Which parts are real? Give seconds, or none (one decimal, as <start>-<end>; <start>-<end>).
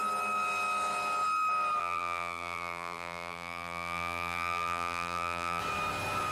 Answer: 0.0-1.8; 5.6-6.3